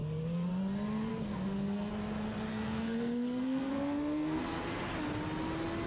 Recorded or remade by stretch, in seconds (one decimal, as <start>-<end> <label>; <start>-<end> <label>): 0.0-1.1 recorded; 1.1-1.9 remade; 1.9-2.5 recorded; 2.5-4.4 remade; 4.4-5.9 recorded